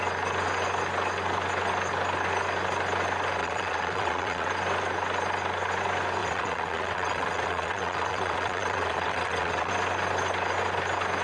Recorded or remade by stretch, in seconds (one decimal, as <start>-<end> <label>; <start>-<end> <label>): 0.0-3.4 recorded; 3.4-4.5 remade; 4.5-6.2 recorded; 6.2-9.7 remade; 9.7-11.2 recorded